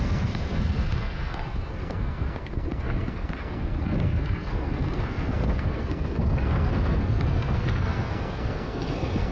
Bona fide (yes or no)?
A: no